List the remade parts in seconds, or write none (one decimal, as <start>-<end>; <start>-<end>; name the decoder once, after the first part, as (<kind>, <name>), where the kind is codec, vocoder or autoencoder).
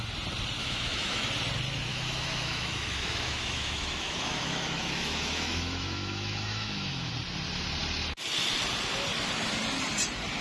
0.6-1.3 (autoencoder, DAC-VAE); 1.9-7.1